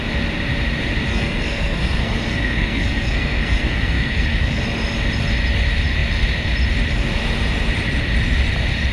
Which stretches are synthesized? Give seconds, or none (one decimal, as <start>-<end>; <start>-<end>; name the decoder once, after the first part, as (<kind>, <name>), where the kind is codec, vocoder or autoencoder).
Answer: 1.1-4.6 (codec, SNAC)